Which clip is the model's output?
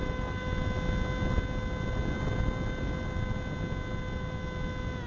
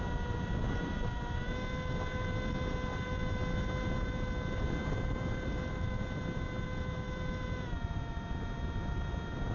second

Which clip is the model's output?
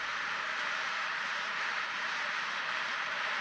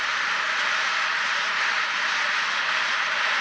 first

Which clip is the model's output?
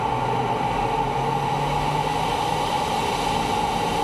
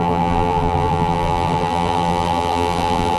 second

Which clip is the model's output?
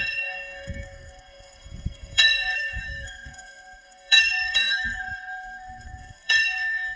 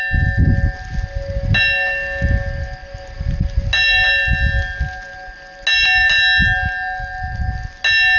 first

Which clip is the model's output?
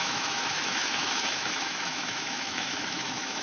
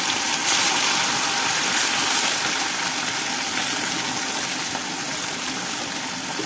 first